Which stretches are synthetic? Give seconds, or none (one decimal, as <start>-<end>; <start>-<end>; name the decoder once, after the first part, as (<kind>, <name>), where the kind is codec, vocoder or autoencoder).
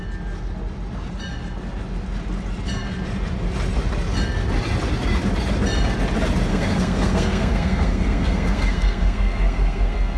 6.5-10.2 (codec, SNAC)